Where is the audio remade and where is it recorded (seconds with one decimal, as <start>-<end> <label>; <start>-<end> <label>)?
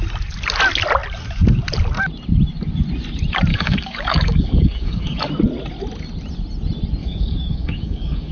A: 0.0-3.5 recorded; 3.5-5.3 remade; 5.3-7.0 recorded; 7.0-8.3 remade